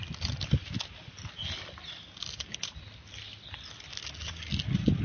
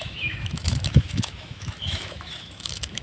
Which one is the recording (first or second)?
first